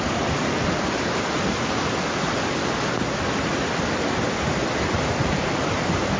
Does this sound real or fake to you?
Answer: real